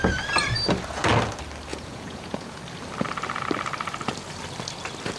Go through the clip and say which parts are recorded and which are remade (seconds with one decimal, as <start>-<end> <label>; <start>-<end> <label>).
0.0-1.7 recorded; 1.7-2.6 remade; 2.6-5.2 recorded